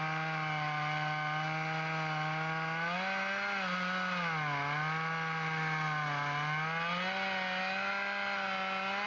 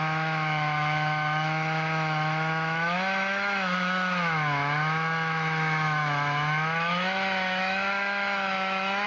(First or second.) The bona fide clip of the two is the first